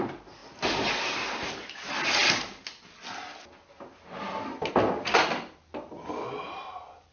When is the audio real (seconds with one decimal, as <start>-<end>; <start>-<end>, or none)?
0.0-7.1